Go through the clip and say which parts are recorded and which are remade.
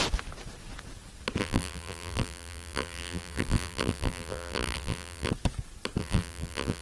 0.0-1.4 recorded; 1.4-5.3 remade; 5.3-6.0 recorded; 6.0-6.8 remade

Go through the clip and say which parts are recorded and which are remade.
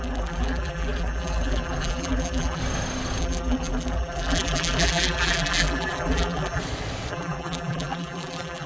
0.0-2.6 remade; 2.6-3.2 recorded; 3.2-6.6 remade; 6.6-7.1 recorded; 7.1-8.7 remade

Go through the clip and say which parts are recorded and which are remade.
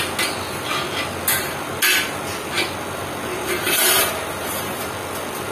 0.0-3.3 recorded; 3.3-4.1 remade; 4.1-5.5 recorded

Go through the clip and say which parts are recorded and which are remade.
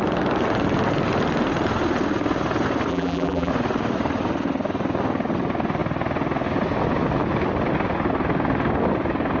0.0-2.9 recorded; 2.9-3.5 remade; 3.5-9.4 recorded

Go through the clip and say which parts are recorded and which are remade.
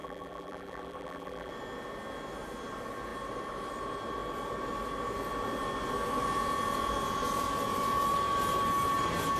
0.0-1.5 remade; 1.5-9.4 recorded